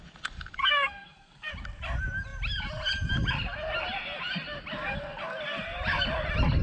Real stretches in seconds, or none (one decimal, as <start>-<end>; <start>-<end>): 0.0-0.6; 1.5-6.6